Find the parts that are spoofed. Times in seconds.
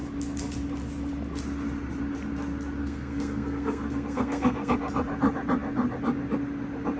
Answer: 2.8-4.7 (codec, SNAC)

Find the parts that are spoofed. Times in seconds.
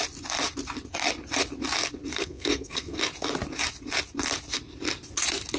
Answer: 2.1-3.0 (codec, SNAC)